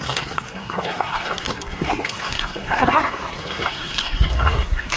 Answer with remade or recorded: remade